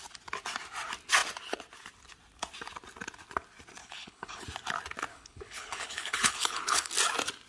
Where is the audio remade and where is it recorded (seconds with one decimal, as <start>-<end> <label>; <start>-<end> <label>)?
0.0-3.8 recorded; 3.8-4.4 remade; 4.4-5.1 recorded; 5.1-6.9 remade; 6.9-7.5 recorded